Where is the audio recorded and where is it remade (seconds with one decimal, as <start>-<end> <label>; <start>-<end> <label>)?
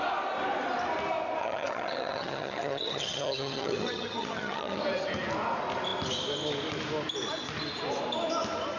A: 0.0-1.4 recorded; 1.4-4.8 remade; 4.8-8.8 recorded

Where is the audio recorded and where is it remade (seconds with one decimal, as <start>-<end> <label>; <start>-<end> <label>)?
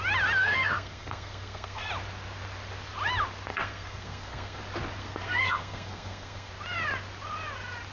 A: 0.0-0.4 recorded; 0.4-1.9 remade; 1.9-3.5 recorded; 3.5-4.6 remade; 4.6-5.0 recorded; 5.0-6.5 remade; 6.5-7.9 recorded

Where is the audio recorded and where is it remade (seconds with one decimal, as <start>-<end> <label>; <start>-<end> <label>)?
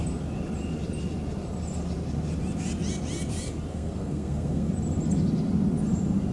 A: 0.0-3.7 recorded; 3.7-4.7 remade; 4.7-6.3 recorded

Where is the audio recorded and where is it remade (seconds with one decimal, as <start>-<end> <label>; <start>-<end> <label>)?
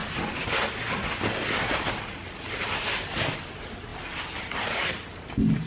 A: 0.0-5.7 recorded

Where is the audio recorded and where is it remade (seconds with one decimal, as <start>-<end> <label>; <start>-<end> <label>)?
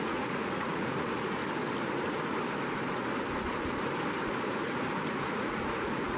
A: 0.0-1.4 remade; 1.4-5.1 recorded; 5.1-6.2 remade